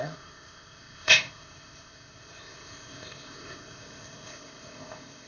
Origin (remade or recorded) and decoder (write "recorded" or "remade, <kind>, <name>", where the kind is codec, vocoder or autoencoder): remade, codec, ZipCodec